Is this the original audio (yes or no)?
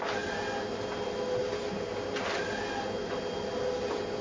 yes